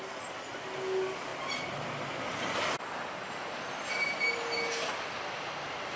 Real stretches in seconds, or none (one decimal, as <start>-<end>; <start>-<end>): 0.0-6.0